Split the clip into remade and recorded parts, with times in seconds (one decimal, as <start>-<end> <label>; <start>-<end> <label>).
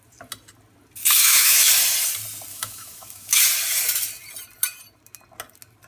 0.0-1.2 recorded; 1.2-1.7 remade; 1.7-2.5 recorded; 2.5-3.4 remade; 3.4-5.9 recorded